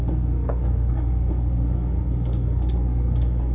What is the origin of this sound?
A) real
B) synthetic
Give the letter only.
B